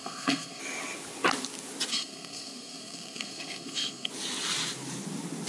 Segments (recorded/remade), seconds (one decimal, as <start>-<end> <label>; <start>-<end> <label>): 0.0-0.6 remade; 0.6-1.9 recorded; 1.9-4.1 remade; 4.1-5.5 recorded